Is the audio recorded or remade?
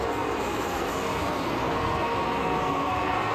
remade